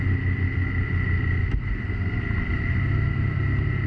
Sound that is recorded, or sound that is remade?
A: remade